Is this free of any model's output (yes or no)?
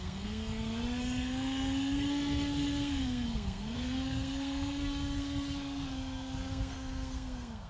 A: no